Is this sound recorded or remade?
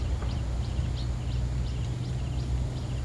recorded